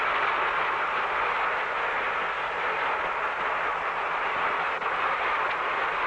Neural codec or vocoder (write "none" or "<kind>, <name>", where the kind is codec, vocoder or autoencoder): none